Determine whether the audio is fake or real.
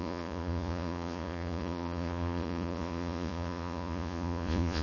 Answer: fake